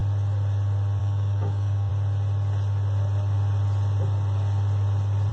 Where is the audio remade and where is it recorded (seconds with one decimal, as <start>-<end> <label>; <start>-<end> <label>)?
0.0-1.0 recorded; 1.0-1.9 remade; 1.9-5.3 recorded

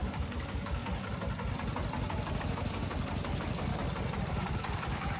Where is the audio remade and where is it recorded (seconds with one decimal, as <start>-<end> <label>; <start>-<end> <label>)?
0.0-0.8 remade; 0.8-2.4 recorded; 2.4-3.7 remade; 3.7-4.3 recorded; 4.3-5.2 remade

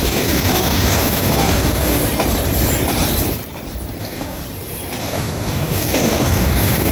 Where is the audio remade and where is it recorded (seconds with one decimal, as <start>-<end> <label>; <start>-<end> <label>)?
0.0-2.0 remade; 2.0-4.0 recorded; 4.0-4.4 remade; 4.4-5.0 recorded; 5.0-6.9 remade

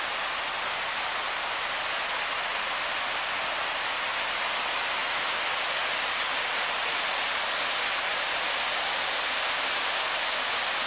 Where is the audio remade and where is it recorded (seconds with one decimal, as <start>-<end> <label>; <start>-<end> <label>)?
0.0-10.9 recorded

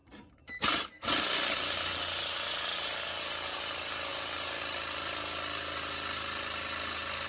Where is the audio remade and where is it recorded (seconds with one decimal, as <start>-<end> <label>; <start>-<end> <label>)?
0.0-7.3 recorded